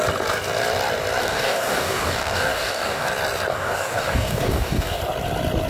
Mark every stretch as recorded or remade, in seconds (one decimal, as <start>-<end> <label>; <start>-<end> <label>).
0.0-1.2 recorded; 1.2-3.1 remade; 3.1-3.5 recorded; 3.5-5.0 remade; 5.0-5.7 recorded